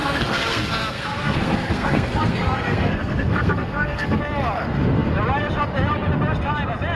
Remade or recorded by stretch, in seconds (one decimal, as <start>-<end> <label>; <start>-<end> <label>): 0.0-4.2 remade; 4.2-7.0 recorded

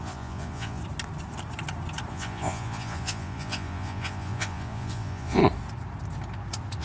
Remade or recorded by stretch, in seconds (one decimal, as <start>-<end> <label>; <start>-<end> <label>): 0.0-0.8 remade; 0.8-2.1 recorded; 2.1-5.4 remade; 5.4-6.8 recorded

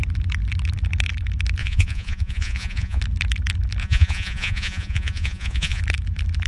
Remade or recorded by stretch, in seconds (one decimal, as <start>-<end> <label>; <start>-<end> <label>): 0.0-1.6 recorded; 1.6-3.0 remade; 3.0-3.8 recorded; 3.8-5.8 remade; 5.8-6.5 recorded

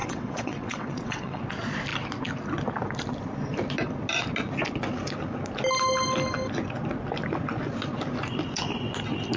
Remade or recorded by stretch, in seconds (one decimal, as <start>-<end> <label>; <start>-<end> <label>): 0.0-1.4 remade; 1.4-9.4 recorded

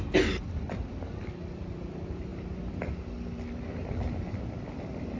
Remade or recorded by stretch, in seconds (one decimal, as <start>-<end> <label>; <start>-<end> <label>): 0.0-5.2 recorded

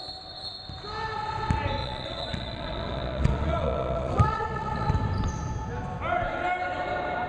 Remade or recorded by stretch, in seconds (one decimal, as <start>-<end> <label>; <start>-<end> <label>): 0.0-1.8 recorded; 1.8-4.9 remade; 4.9-7.3 recorded

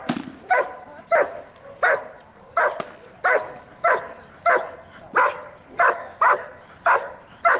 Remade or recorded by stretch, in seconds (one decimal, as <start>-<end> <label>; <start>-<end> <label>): 0.0-7.6 recorded